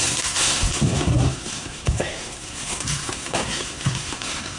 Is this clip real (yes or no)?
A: no